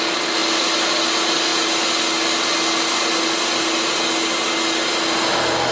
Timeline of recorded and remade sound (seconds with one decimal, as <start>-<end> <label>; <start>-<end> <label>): 0.0-5.7 recorded